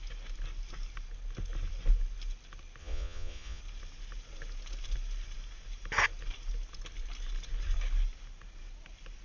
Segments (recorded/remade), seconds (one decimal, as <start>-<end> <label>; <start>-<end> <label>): 0.0-2.8 recorded; 2.8-3.6 remade; 3.6-9.2 recorded